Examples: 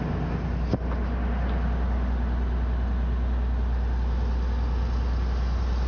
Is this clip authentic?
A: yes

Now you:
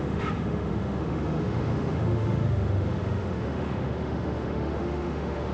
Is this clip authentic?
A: no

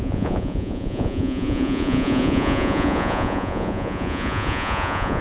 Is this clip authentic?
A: no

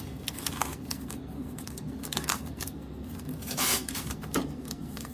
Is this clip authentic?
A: no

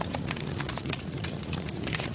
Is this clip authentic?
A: no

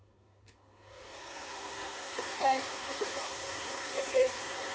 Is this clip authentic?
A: no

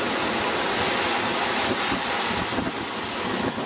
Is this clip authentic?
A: yes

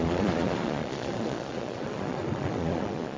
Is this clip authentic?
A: no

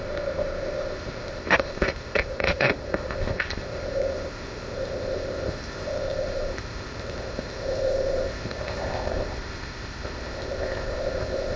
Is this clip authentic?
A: no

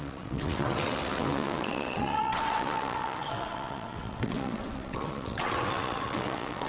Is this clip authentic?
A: no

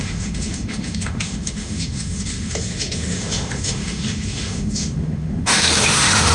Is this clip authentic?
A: no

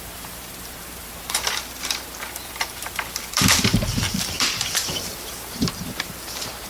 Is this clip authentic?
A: no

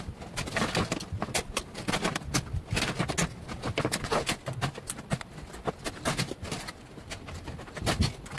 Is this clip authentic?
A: yes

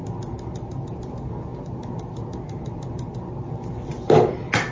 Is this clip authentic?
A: yes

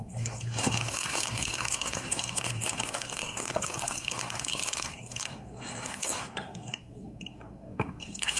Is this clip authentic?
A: no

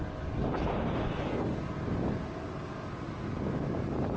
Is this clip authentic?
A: yes